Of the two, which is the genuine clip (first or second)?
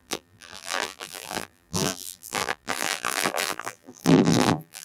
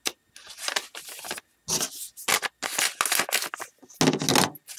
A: second